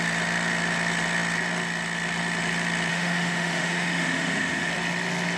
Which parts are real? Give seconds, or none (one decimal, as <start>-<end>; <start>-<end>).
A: 0.0-2.9; 4.7-5.4